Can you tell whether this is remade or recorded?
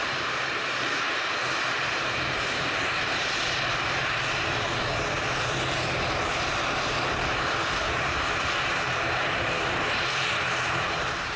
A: remade